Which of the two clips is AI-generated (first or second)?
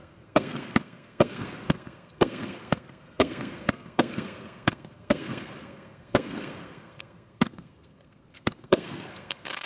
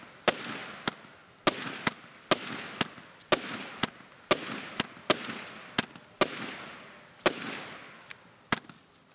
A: first